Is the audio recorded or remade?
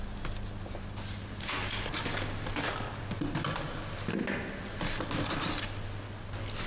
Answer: recorded